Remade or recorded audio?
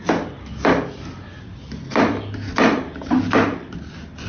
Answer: recorded